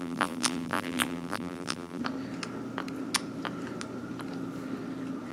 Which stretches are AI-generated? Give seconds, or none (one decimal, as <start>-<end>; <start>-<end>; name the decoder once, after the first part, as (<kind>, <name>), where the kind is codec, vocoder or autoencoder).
0.0-2.0 (vocoder, BigVGAN v2)